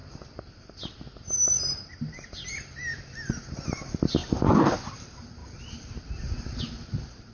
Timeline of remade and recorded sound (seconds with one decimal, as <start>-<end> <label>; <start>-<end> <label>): 0.0-7.3 recorded